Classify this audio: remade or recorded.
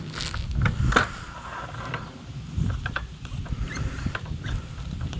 remade